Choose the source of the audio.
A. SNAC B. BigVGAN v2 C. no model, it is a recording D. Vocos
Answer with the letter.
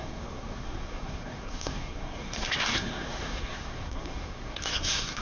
A